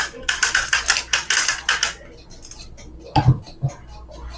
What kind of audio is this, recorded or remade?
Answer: recorded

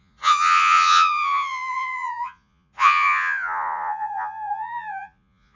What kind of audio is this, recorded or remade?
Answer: remade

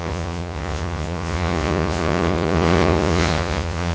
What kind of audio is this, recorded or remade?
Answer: remade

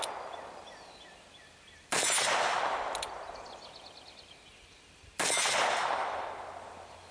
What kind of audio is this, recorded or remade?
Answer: recorded